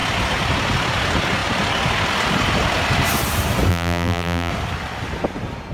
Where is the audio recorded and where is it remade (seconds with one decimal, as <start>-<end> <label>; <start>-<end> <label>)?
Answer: 0.0-3.7 recorded; 3.7-4.5 remade; 4.5-5.7 recorded